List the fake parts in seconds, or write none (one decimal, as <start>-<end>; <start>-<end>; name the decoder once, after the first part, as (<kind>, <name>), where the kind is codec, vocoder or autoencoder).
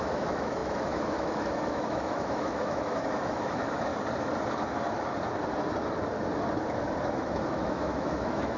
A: 0.0-3.9 (autoencoder, DAC-VAE); 7.1-8.6